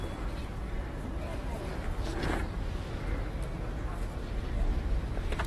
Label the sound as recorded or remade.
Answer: recorded